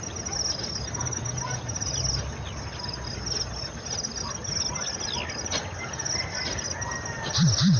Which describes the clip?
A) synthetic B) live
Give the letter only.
B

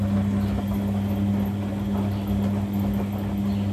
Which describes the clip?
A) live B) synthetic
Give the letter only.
A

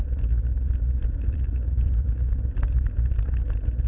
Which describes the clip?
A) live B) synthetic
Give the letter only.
A